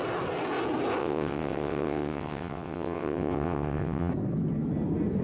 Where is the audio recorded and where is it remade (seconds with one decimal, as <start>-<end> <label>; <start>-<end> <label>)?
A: 0.0-1.0 recorded; 1.0-4.1 remade; 4.1-5.2 recorded